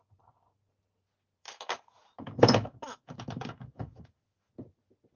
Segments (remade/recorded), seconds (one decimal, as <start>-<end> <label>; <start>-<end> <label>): 0.0-1.4 recorded; 1.4-4.5 remade; 4.5-5.2 recorded